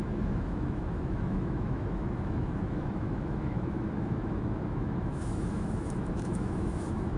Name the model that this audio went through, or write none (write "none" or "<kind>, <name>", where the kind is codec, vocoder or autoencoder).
autoencoder, DAC-VAE